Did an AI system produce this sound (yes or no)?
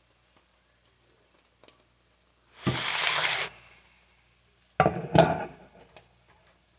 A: no